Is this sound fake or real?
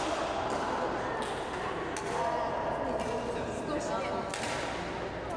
real